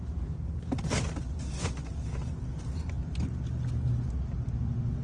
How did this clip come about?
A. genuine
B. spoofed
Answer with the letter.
A